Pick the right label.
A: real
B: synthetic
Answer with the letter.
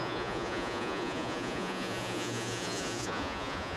B